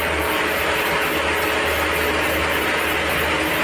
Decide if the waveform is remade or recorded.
recorded